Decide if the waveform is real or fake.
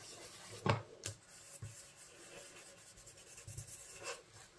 real